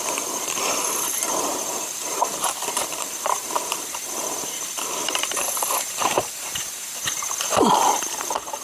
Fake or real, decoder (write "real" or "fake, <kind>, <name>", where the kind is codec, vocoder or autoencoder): fake, vocoder, BigVGAN v2